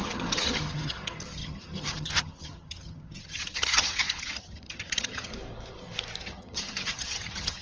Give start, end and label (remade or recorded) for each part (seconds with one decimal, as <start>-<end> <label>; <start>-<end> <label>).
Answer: 0.0-5.3 remade; 5.3-6.2 recorded; 6.2-7.6 remade